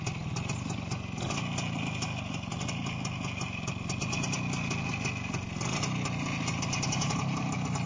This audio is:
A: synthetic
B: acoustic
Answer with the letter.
B